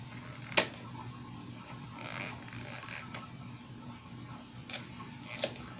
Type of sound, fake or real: real